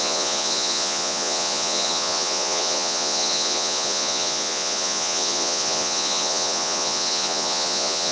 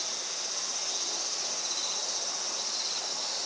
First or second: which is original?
second